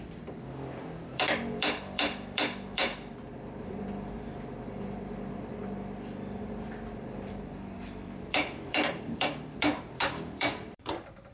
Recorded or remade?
remade